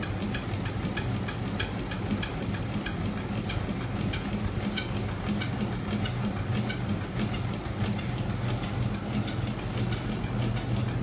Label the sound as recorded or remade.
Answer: recorded